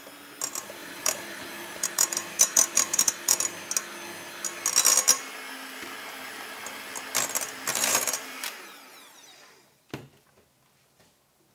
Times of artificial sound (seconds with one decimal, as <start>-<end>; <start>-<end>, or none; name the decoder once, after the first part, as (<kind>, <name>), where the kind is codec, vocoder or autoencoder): 0.8-3.4 (vocoder, BigVGAN v2); 7.7-10.0